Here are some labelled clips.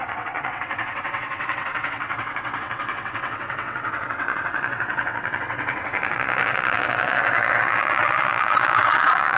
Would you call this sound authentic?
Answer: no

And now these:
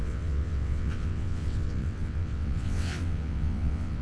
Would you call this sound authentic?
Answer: no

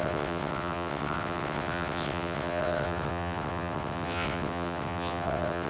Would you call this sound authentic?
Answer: no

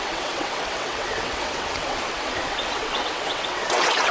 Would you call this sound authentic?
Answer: no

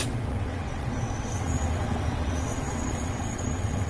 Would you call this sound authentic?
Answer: no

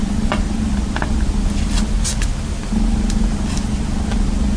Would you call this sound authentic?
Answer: yes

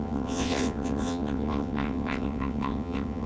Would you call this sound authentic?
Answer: no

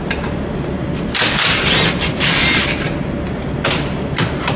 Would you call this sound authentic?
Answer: yes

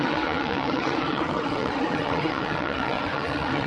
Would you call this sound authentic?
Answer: no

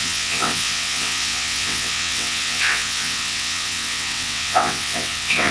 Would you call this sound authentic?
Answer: no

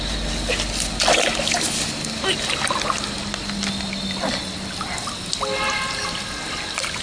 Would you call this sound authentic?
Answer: yes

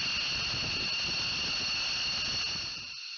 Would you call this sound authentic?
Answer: yes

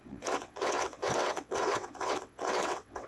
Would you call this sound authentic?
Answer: no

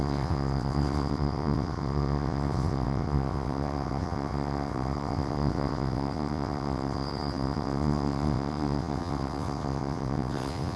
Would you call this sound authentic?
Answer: no